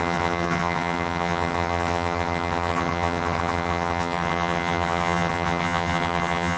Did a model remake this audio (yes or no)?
yes